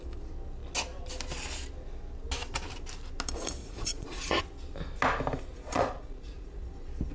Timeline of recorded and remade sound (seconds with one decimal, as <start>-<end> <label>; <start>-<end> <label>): 0.0-3.6 recorded; 3.6-4.4 remade; 4.4-5.5 recorded; 5.5-6.6 remade; 6.6-7.1 recorded